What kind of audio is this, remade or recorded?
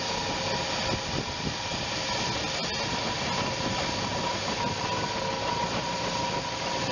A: recorded